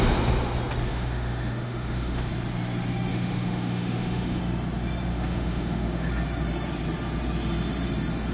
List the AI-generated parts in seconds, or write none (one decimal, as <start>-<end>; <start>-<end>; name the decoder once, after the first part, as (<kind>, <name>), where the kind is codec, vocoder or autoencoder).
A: 0.9-2.3 (autoencoder, DAC-VAE); 3.1-4.4; 5.1-6.1